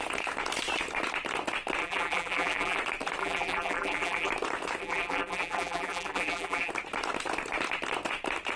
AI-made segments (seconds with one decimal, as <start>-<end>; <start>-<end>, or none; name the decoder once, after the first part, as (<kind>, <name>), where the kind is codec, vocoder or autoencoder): 1.8-2.8 (vocoder, BigVGAN v2); 3.2-4.3; 4.8-6.7